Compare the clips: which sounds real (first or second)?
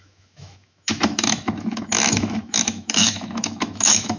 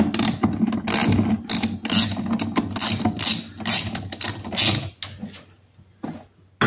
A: second